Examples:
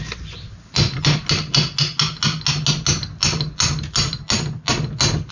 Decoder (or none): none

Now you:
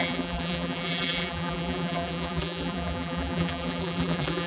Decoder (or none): vocoder, BigVGAN v2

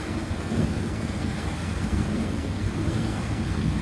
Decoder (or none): codec, SNAC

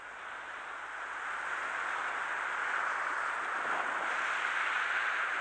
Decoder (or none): none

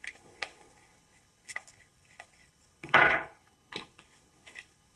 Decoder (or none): codec, HILCodec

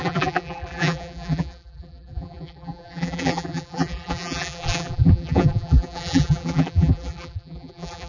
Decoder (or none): vocoder, BigVGAN v2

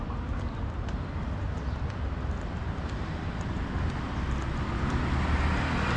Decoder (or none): none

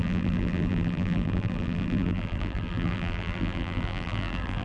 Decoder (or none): vocoder, BigVGAN v2